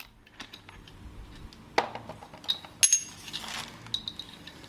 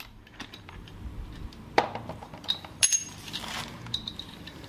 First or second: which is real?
first